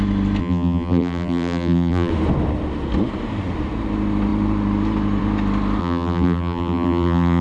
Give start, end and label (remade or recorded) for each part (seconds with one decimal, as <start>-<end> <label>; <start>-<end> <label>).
0.0-0.4 recorded; 0.4-2.1 remade; 2.1-5.8 recorded; 5.8-7.4 remade